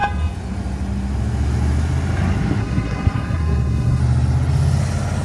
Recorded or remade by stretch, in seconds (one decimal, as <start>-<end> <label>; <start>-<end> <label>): 0.0-2.6 recorded; 2.6-4.0 remade; 4.0-5.2 recorded